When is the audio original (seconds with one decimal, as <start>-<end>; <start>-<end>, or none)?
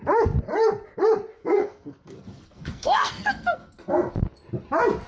0.0-1.4; 4.1-5.1